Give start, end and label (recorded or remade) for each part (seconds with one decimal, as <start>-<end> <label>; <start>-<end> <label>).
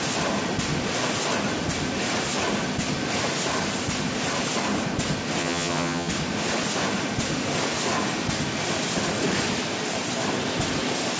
0.0-5.4 recorded; 5.4-6.1 remade; 6.1-11.2 recorded